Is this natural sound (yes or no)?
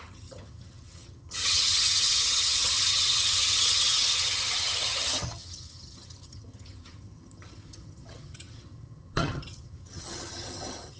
no